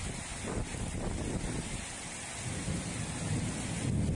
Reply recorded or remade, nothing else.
recorded